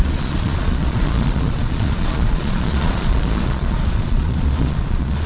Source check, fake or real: fake